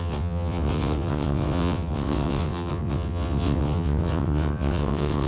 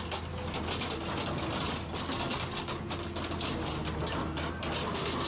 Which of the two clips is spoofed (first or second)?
first